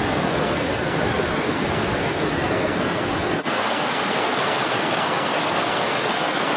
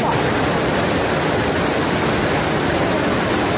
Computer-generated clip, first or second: first